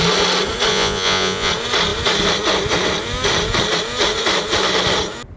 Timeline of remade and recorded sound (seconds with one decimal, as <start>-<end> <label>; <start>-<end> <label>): 0.0-0.7 recorded; 0.7-1.5 remade; 1.5-5.4 recorded

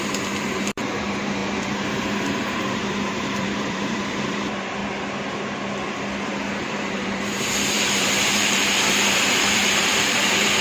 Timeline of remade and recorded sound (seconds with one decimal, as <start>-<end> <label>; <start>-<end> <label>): 0.0-4.8 remade; 4.8-6.6 recorded; 6.6-10.6 remade

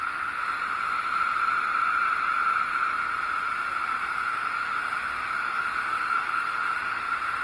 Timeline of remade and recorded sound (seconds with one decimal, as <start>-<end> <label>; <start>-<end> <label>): 0.0-4.3 recorded; 4.3-7.0 remade; 7.0-7.4 recorded

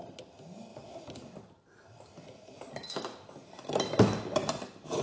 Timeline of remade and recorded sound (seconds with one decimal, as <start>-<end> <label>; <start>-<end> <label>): 0.0-5.0 recorded

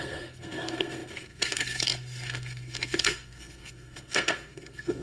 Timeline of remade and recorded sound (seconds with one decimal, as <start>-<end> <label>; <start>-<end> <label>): 0.0-5.0 remade

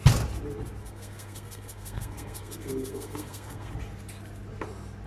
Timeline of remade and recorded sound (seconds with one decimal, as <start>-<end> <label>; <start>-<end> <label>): 0.0-0.8 recorded; 0.8-3.7 remade; 3.7-5.1 recorded